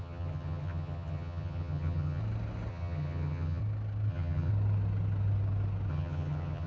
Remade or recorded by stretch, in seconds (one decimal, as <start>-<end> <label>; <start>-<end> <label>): 0.0-2.2 remade; 2.2-2.7 recorded; 2.7-3.6 remade; 3.6-4.1 recorded; 4.1-4.5 remade; 4.5-5.9 recorded; 5.9-6.7 remade